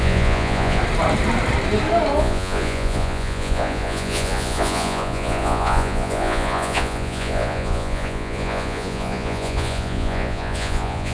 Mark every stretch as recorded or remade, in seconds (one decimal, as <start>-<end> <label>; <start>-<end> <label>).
0.0-0.8 remade; 0.8-2.2 recorded; 2.2-11.1 remade